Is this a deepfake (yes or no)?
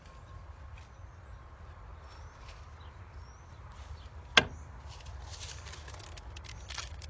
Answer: no